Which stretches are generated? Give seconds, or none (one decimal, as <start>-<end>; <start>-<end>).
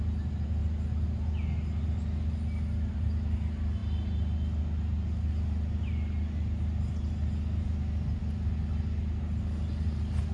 none